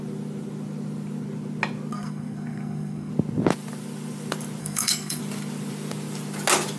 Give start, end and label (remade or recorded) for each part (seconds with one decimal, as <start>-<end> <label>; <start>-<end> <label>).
0.0-1.9 recorded; 1.9-3.1 remade; 3.1-4.6 recorded; 4.6-5.2 remade; 5.2-6.8 recorded